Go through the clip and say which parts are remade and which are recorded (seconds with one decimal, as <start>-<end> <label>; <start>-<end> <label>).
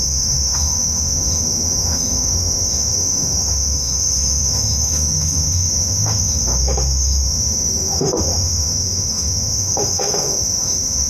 0.0-11.1 remade